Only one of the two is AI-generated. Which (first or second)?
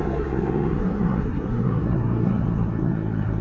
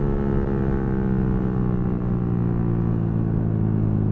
first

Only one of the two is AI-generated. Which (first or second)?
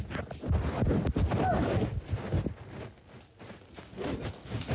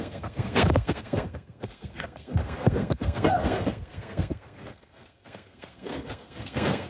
second